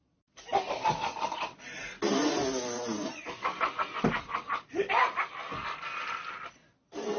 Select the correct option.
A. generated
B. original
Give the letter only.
B